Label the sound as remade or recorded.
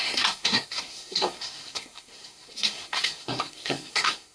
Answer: remade